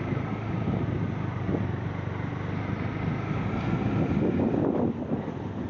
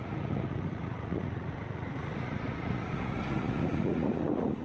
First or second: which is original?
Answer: first